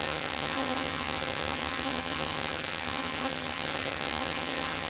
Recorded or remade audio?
remade